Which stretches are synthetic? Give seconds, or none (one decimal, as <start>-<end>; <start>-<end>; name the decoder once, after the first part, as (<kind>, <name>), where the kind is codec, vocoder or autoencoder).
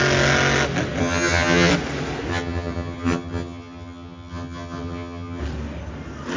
1.0-1.7 (vocoder, HiFi-GAN); 2.3-5.4